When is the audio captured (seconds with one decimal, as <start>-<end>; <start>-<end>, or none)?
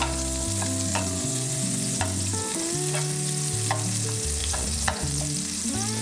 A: 0.0-0.9; 2.3-4.4; 5.2-6.0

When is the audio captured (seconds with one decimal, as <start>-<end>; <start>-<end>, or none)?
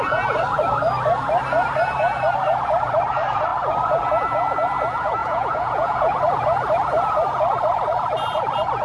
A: 0.0-5.2; 6.2-8.8